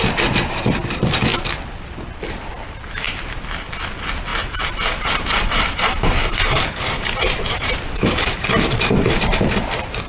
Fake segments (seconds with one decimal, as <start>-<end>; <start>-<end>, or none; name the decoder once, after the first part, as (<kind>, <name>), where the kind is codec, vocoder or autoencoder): 4.3-9.5 (vocoder, BigVGAN v2)